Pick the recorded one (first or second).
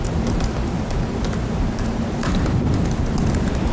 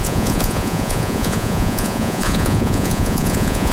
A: first